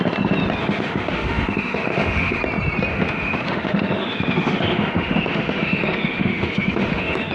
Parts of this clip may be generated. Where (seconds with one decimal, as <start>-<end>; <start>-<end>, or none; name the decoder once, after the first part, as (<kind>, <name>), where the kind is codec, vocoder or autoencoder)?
0.6-2.4 (autoencoder, DAC-VAE); 2.9-7.3